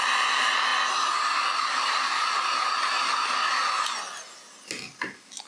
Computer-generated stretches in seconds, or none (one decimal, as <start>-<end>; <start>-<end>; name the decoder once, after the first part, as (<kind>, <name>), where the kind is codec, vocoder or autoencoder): none